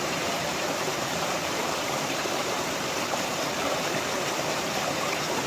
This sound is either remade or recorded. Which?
remade